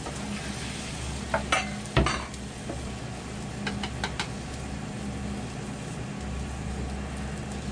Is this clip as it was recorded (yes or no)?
yes